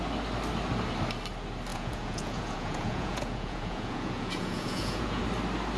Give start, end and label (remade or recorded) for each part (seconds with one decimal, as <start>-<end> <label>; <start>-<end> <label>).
0.0-1.7 recorded; 1.7-5.2 remade; 5.2-5.8 recorded

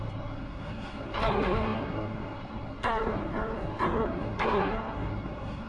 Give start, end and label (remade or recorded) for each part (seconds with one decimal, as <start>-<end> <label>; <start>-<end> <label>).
0.0-5.7 remade

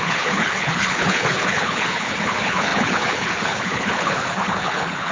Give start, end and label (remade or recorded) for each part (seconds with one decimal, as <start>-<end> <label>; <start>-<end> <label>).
0.0-5.1 remade

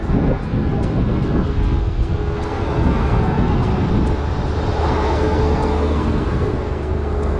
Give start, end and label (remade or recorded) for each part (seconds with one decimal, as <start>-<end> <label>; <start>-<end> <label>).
0.0-3.7 remade; 3.7-4.8 recorded; 4.8-7.4 remade